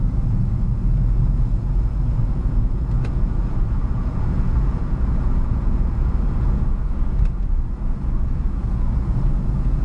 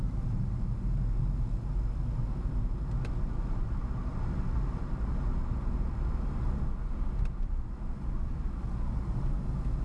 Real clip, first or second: second